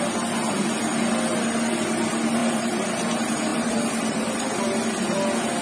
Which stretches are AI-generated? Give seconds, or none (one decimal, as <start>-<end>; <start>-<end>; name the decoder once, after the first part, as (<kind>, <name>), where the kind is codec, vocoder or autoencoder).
2.4-2.9 (vocoder, BigVGAN v2); 3.5-4.6